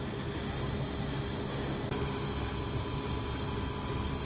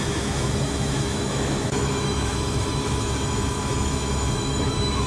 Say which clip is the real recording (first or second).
first